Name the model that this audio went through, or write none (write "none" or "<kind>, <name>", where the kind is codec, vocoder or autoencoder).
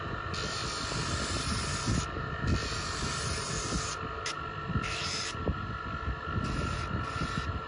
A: none